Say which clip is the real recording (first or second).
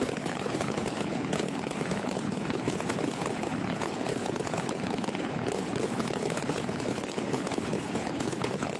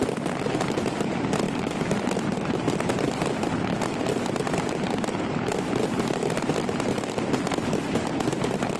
second